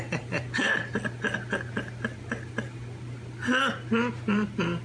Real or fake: real